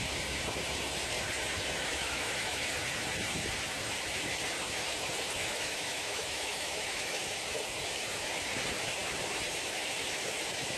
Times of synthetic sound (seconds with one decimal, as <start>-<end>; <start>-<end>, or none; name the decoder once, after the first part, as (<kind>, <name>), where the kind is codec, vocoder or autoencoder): 1.9-2.6 (autoencoder, DAC-VAE); 5.4-7.2